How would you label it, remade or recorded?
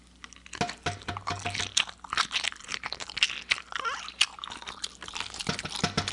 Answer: recorded